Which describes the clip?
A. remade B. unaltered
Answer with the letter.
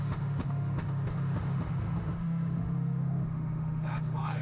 A